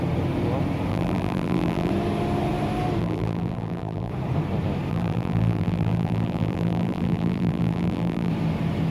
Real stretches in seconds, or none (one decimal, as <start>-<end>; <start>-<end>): 0.0-0.9; 1.9-3.0; 4.1-4.9; 8.3-8.9